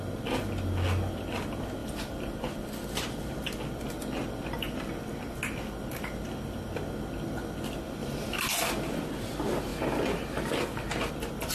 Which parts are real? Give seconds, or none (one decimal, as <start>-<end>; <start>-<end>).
0.0-1.8; 2.5-8.0; 8.5-11.5